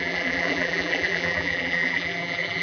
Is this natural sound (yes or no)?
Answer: no